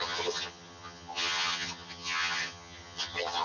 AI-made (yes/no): yes